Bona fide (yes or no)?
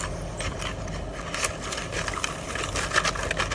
yes